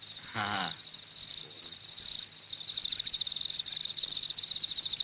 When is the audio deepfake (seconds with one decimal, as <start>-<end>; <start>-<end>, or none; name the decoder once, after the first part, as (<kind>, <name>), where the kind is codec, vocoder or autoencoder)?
none